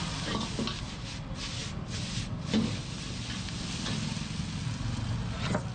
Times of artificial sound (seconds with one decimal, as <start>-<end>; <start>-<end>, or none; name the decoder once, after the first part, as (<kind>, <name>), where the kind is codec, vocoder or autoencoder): none